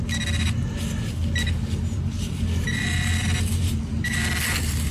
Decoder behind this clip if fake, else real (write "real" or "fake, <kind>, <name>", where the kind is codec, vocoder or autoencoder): real